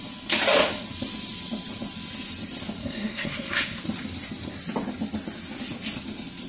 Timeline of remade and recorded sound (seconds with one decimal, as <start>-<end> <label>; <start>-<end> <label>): 0.0-2.8 recorded; 2.8-3.8 remade; 3.8-6.5 recorded